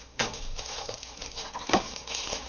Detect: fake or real fake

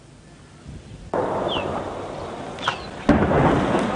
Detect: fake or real real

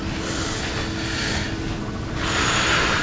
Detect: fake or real real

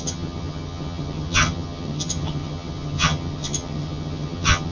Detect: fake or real fake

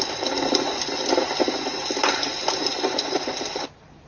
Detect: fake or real real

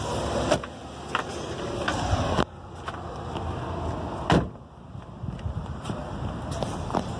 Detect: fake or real real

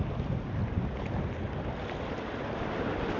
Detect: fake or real real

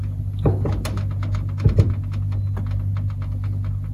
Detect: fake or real real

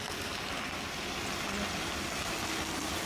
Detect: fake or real real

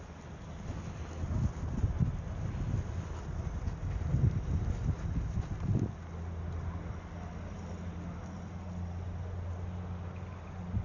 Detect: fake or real real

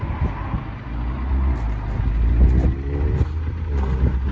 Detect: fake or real real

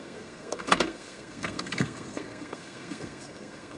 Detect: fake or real fake